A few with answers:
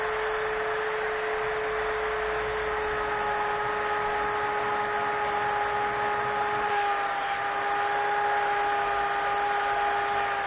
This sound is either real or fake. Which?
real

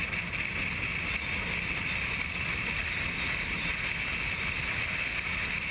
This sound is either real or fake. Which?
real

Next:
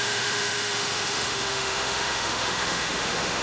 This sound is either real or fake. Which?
fake